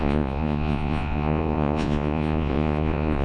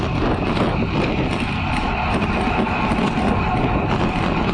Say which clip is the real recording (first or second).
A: second